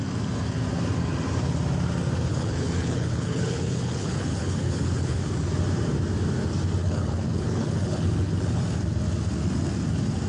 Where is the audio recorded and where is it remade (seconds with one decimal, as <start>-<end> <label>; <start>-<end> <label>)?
0.0-2.3 recorded; 2.3-5.2 remade; 5.2-6.8 recorded; 6.8-8.6 remade; 8.6-10.3 recorded